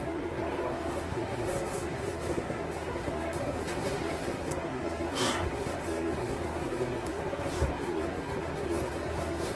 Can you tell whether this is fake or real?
fake